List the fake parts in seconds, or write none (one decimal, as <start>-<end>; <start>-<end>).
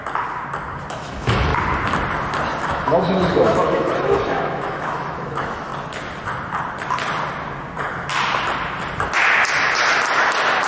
0.9-1.5; 2.7-5.7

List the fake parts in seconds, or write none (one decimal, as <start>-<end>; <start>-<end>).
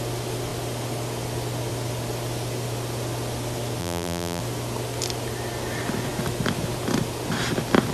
3.8-4.4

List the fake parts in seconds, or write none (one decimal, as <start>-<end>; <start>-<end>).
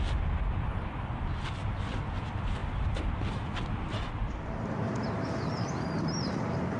none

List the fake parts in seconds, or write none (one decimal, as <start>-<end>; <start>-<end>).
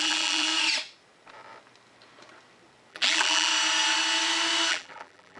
0.0-0.5; 2.9-3.5; 4.7-5.4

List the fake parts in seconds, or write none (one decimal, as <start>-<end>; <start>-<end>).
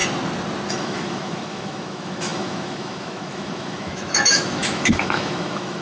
0.7-5.8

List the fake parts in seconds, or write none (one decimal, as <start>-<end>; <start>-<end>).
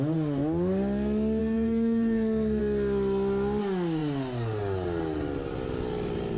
1.4-2.6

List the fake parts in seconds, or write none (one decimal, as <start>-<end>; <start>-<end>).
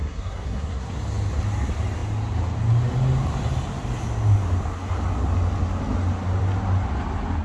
0.0-0.9